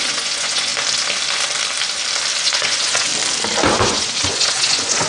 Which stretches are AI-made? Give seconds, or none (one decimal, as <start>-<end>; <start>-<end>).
0.0-0.7; 2.4-3.1; 3.7-5.1